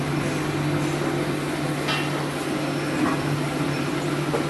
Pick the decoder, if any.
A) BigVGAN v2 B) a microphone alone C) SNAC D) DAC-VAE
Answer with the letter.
B